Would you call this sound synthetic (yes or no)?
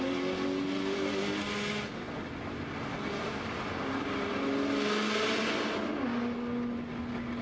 no